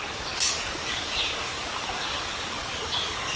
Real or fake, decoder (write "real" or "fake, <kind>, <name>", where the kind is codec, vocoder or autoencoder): fake, codec, DAC